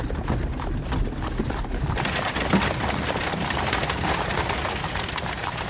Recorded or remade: recorded